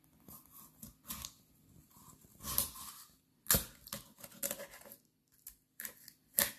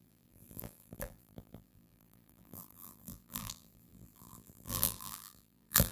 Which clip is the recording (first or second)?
first